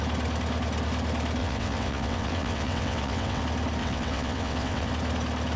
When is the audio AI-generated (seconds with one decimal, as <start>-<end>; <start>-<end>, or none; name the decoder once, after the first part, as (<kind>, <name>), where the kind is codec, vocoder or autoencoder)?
1.4-3.4 (vocoder, WaveNeXt); 3.8-4.9